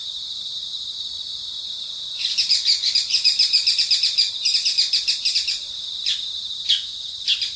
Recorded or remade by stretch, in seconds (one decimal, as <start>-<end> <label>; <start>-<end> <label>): 0.0-7.6 recorded